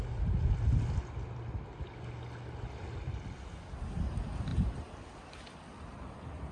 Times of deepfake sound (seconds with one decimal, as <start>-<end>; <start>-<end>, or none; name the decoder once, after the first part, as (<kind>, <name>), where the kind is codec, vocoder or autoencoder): none